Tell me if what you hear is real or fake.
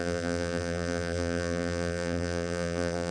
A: fake